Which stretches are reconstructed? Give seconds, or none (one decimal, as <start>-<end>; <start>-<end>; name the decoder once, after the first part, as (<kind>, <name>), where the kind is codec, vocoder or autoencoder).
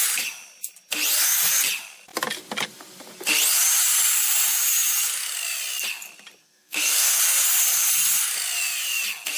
6.4-7.2 (codec, SNAC)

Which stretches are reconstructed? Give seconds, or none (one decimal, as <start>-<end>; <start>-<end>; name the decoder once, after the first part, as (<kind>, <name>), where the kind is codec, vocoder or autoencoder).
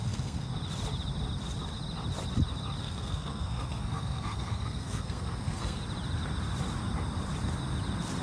0.0-0.5 (codec, SNAC); 2.8-5.8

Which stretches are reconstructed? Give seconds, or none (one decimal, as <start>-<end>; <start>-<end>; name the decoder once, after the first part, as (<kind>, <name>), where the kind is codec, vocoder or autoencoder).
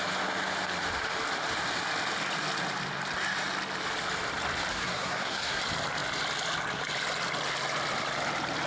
4.7-5.6 (codec, SNAC)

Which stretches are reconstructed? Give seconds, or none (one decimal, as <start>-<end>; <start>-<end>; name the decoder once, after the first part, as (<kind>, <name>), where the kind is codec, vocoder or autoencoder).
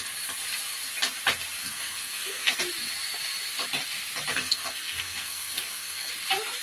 1.6-2.6 (codec, SNAC); 4.3-6.1